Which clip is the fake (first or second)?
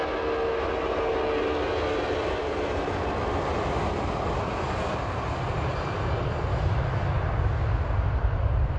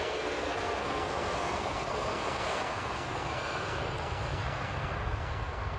second